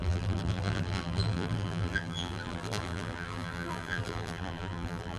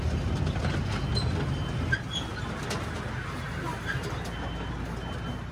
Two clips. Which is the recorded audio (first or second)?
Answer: second